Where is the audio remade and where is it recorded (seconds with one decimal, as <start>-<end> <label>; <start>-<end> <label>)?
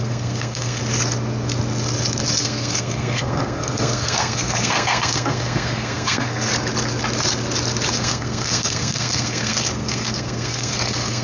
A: 0.0-0.8 remade; 0.8-2.4 recorded; 2.4-6.5 remade; 6.5-7.9 recorded; 7.9-11.2 remade